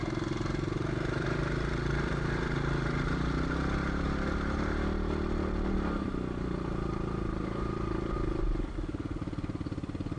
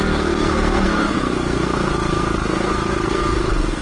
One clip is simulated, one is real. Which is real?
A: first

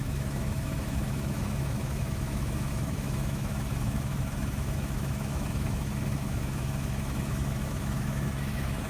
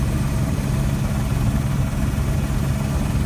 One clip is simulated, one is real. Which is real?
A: second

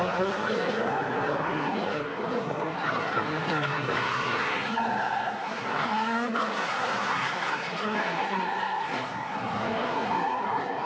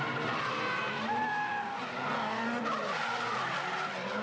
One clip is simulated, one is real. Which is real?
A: second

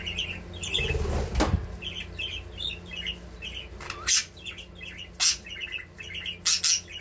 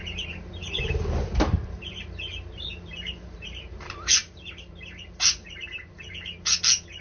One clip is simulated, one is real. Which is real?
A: first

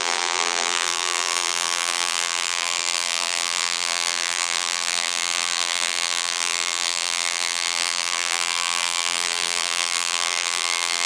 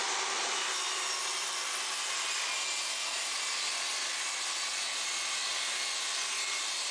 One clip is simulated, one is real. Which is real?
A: second